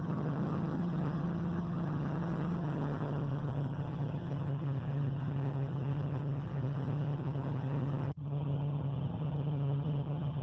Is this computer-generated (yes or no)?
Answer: yes